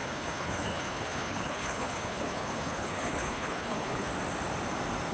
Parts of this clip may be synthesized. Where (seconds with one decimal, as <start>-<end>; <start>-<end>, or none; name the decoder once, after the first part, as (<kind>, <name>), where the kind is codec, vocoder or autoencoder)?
0.0-4.1 (codec, HILCodec)